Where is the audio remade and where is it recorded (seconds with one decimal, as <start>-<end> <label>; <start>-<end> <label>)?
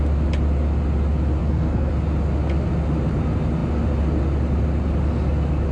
0.0-1.4 recorded; 1.4-1.9 remade; 1.9-5.7 recorded